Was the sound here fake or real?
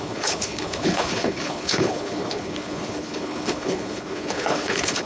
fake